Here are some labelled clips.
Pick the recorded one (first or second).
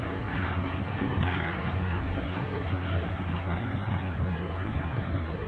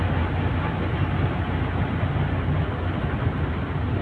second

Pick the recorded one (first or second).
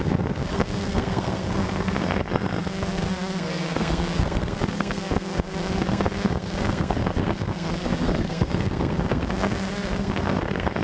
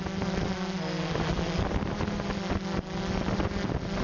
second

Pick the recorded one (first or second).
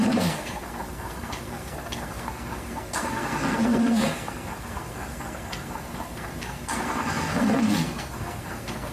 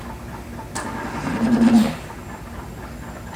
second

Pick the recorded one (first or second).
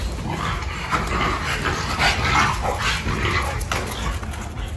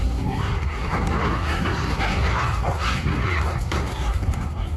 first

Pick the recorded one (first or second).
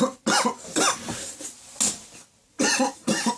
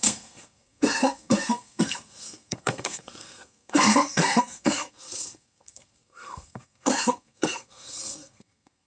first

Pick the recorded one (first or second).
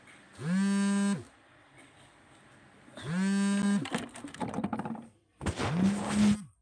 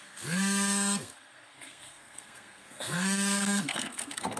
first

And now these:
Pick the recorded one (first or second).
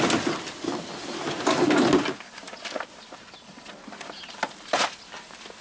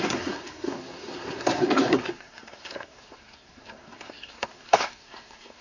first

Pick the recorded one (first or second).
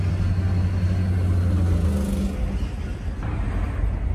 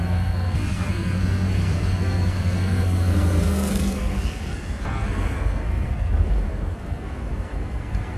first